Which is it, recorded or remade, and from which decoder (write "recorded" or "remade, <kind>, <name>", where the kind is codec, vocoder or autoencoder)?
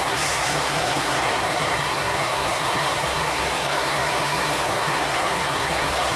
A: remade, codec, SNAC